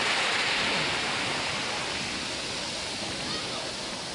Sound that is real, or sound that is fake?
real